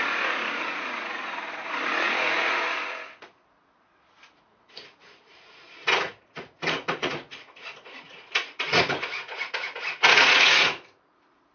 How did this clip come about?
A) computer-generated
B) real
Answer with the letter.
A